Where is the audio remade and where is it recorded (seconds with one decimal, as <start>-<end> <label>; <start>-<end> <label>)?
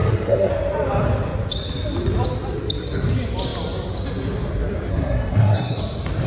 0.0-0.5 remade; 0.5-4.9 recorded; 4.9-5.8 remade; 5.8-6.3 recorded